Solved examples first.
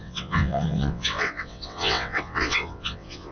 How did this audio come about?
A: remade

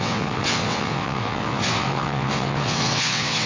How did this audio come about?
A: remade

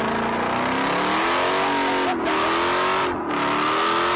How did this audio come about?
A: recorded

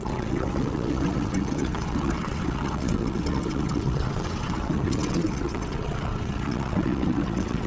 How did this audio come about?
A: remade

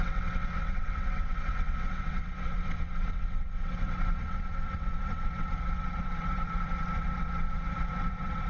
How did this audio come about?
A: remade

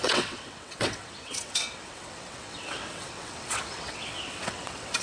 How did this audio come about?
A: remade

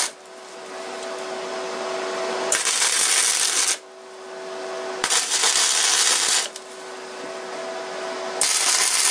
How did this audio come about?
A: recorded